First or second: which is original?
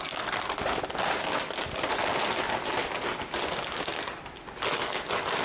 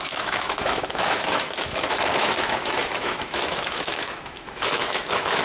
first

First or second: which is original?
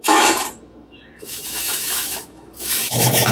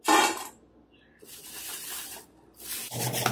second